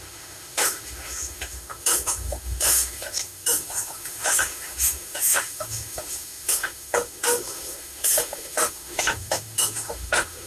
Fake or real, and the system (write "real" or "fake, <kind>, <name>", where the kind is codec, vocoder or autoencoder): fake, autoencoder, DAC-VAE